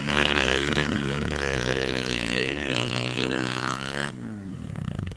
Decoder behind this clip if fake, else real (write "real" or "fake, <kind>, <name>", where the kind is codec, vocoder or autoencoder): fake, codec, SNAC